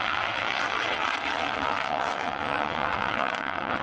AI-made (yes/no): yes